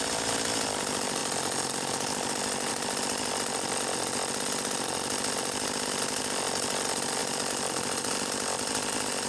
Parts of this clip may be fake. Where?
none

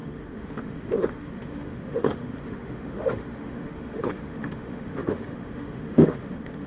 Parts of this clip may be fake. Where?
0.0-6.7 (autoencoder, DAC-VAE)

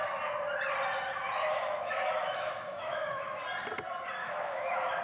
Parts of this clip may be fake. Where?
1.4-3.4 (autoencoder, DAC-VAE); 4.2-5.0

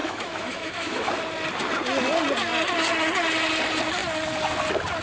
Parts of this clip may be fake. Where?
0.0-1.1 (autoencoder, DAC-VAE)